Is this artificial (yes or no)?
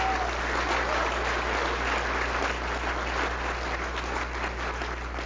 no